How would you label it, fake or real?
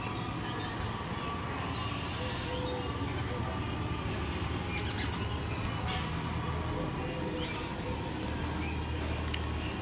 real